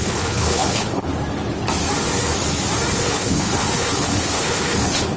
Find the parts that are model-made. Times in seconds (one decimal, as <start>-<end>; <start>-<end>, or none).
0.0-1.1; 2.9-5.2